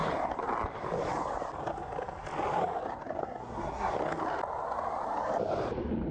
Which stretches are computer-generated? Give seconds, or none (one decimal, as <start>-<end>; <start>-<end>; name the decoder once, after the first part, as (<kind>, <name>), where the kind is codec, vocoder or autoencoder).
3.2-3.9 (codec, SNAC)